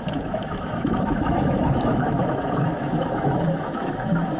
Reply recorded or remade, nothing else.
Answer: remade